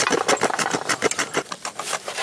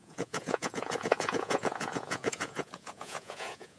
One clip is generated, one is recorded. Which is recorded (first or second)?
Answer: first